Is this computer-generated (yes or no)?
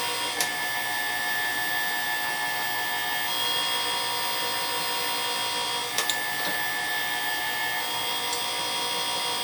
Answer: no